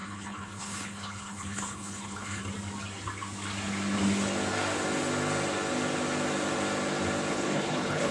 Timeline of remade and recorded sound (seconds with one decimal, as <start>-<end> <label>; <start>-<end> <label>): 0.0-2.4 remade; 2.4-7.3 recorded; 7.3-8.1 remade